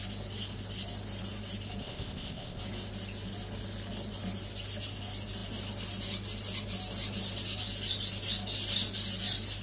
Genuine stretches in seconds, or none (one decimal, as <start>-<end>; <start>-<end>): 0.0-1.8; 2.6-9.6